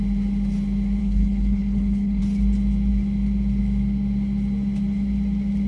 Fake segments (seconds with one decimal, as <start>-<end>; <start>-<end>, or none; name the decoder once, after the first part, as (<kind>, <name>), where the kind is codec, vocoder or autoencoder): 1.0-2.2 (codec, HILCodec)